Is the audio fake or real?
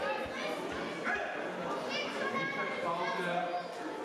real